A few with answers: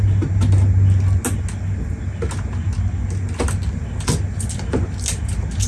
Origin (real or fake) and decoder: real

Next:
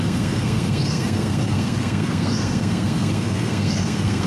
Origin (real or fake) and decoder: fake, codec, SNAC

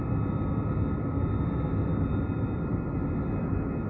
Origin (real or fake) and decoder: real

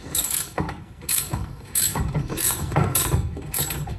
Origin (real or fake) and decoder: fake, codec, SNAC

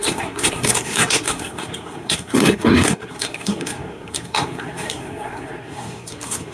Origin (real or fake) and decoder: fake, codec, SNAC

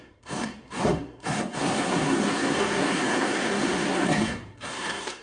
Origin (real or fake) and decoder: fake, codec, SNAC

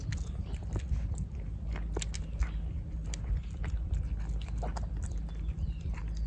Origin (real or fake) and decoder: real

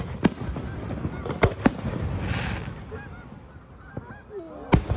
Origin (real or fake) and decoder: real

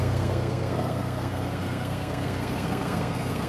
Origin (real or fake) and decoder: fake, codec, SNAC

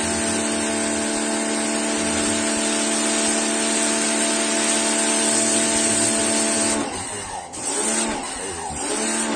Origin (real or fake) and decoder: real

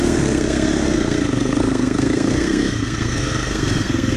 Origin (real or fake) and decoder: fake, codec, SNAC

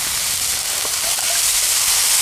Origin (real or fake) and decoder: real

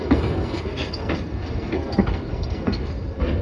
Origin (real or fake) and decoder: fake, codec, SNAC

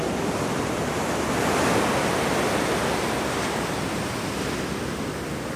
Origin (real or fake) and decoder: real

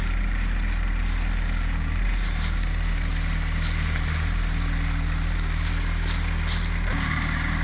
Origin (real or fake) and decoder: real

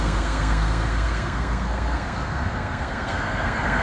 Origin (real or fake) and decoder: fake, codec, SNAC